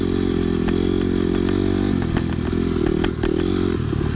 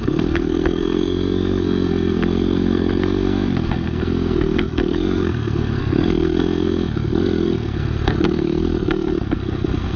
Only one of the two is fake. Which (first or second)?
second